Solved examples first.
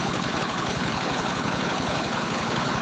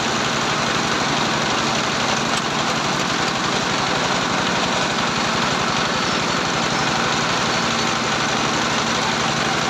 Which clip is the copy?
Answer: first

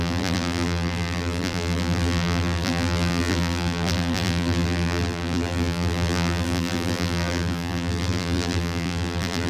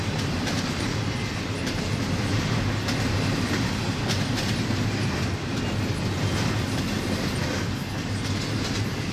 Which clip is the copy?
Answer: first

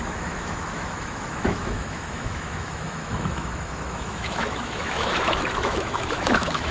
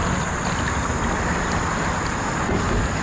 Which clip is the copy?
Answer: first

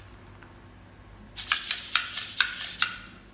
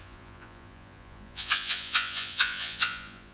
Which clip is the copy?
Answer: second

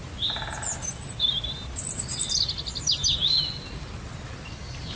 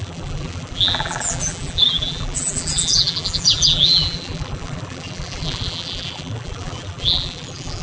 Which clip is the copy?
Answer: second